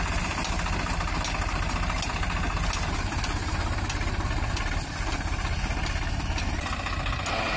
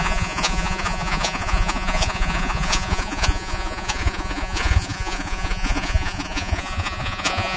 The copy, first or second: second